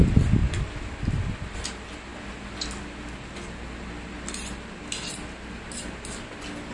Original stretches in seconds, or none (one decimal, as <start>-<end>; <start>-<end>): 0.0-6.7